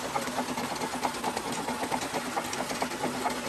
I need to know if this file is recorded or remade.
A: recorded